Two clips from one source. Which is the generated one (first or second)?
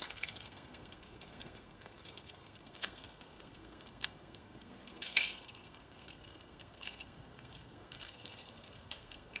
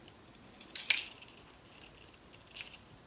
first